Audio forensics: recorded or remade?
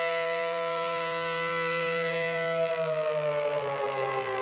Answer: remade